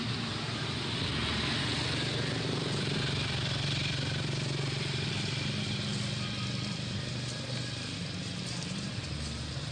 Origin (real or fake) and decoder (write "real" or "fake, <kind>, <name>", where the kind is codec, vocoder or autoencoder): real